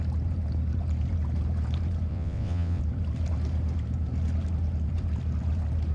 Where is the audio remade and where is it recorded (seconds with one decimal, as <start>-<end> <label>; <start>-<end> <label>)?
0.0-2.1 recorded; 2.1-2.8 remade; 2.8-5.9 recorded